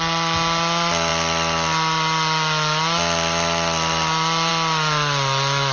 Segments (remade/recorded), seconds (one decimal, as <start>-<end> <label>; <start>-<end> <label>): 0.0-5.7 recorded